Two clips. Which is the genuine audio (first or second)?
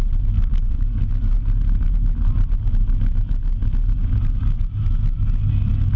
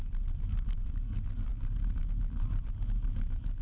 first